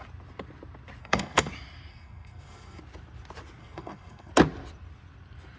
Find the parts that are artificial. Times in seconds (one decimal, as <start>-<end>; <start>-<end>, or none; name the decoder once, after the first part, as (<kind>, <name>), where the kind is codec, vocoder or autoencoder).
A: 1.0-1.5 (codec, SNAC); 1.9-2.8; 3.6-4.3